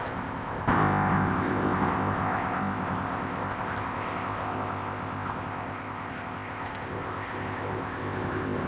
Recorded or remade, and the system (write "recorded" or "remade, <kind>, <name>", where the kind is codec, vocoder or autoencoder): remade, codec, ZipCodec